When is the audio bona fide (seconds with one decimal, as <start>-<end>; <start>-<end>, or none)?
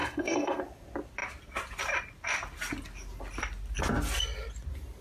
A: 0.6-5.0